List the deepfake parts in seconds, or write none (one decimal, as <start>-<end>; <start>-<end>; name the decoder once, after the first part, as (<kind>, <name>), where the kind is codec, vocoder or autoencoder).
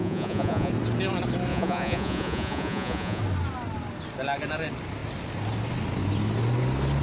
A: 0.0-0.7 (vocoder, Vocos); 1.5-3.2